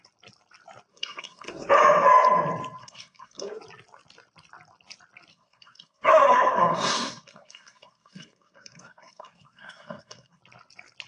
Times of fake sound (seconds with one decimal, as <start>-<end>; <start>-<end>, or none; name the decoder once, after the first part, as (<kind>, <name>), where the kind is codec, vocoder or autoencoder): 0.9-1.7 (codec, SNAC); 2.8-3.6; 5.3-10.4